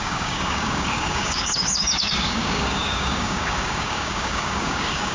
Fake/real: fake